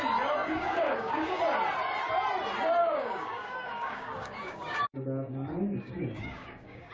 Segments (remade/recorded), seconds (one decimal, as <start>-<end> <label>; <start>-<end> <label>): 0.0-0.4 recorded; 0.4-1.4 remade; 1.4-2.8 recorded; 2.8-6.9 remade